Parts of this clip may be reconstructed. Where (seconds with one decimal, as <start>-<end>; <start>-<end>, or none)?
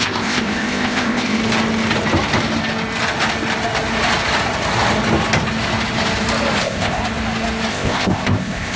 0.0-1.4; 6.6-7.0; 7.7-8.8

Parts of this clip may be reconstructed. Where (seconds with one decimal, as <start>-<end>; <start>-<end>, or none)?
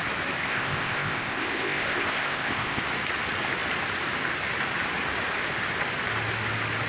0.4-2.8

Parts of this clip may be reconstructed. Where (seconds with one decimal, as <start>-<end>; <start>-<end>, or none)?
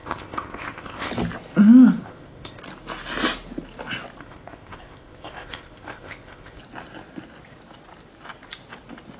0.0-1.1; 2.0-2.6; 4.2-6.6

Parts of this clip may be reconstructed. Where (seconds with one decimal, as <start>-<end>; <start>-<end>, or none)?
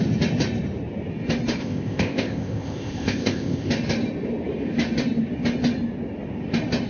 1.6-3.7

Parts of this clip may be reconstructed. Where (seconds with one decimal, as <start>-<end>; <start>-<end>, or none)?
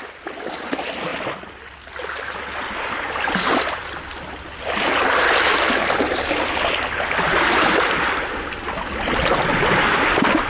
none